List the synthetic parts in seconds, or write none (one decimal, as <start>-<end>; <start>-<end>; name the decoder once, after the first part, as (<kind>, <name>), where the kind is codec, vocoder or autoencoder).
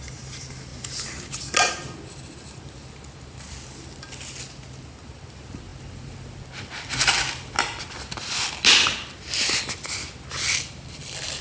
none